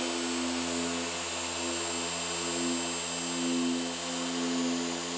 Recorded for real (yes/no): yes